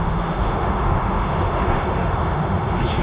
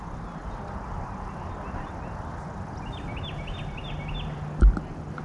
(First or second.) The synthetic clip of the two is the first